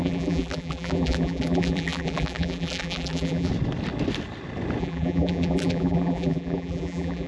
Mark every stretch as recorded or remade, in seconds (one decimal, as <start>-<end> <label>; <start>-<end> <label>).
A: 0.0-3.5 remade; 3.5-4.8 recorded; 4.8-7.3 remade